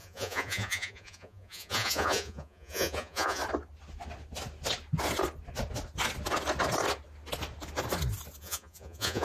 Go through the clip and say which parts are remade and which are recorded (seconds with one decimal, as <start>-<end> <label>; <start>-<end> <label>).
0.0-3.4 remade; 3.4-8.4 recorded; 8.4-9.2 remade